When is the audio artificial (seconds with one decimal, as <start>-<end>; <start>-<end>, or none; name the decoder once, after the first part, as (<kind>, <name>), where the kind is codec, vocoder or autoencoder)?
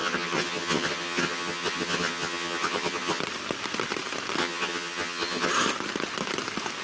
0.0-3.2 (vocoder, HiFi-GAN); 4.4-5.5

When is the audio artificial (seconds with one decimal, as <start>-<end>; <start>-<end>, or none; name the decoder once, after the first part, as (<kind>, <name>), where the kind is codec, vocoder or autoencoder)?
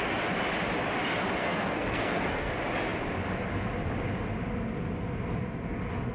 1.4-2.5 (codec, SNAC)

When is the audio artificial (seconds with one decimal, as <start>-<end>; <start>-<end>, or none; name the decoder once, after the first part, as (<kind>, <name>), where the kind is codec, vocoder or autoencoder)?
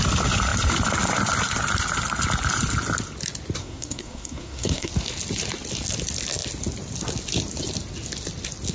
3.6-4.9 (codec, SNAC)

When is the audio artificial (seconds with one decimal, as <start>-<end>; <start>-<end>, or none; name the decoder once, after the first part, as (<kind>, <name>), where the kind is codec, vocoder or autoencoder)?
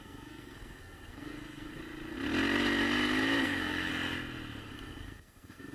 0.0-1.8 (codec, SNAC); 3.4-3.9; 4.6-5.7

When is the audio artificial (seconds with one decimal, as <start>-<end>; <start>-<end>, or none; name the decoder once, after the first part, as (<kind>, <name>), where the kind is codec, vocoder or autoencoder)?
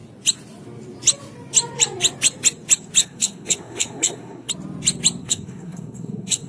3.0-4.5 (codec, SNAC); 5.2-6.5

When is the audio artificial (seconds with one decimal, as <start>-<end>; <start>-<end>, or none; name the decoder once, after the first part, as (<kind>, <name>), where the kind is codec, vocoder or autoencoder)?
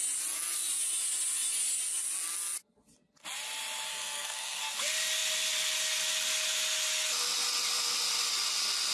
3.9-4.6 (codec, SNAC)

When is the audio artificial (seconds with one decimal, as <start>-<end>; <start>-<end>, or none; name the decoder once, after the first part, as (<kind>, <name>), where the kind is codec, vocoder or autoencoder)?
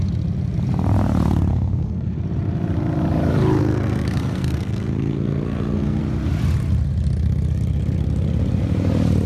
1.5-2.2 (codec, SNAC); 3.6-6.0